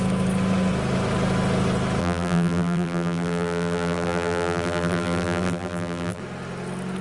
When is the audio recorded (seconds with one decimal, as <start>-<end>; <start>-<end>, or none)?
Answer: 0.0-2.0; 6.2-7.0